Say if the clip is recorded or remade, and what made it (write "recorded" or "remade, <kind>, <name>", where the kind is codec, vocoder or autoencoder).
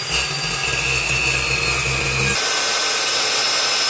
recorded